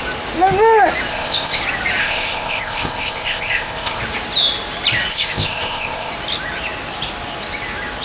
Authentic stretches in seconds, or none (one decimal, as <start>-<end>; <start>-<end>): 0.0-1.1; 1.6-2.0; 4.0-5.1; 6.1-8.0